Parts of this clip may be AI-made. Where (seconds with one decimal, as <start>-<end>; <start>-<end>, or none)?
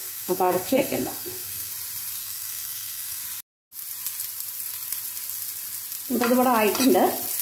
0.0-1.7; 2.2-3.2